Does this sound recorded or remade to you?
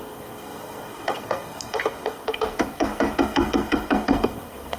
remade